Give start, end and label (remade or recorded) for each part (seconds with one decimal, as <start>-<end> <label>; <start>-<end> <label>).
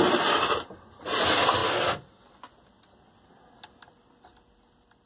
0.0-5.1 recorded